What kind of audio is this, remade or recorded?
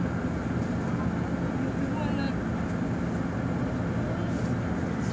recorded